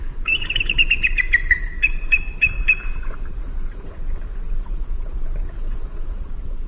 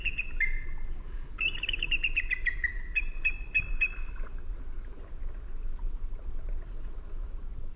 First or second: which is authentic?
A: second